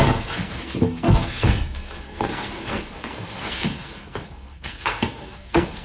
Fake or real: fake